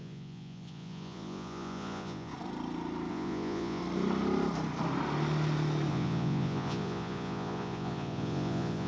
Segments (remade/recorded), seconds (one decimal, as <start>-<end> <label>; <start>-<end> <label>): 0.0-2.3 remade; 2.3-3.1 recorded; 3.1-3.8 remade; 3.8-5.9 recorded; 5.9-8.9 remade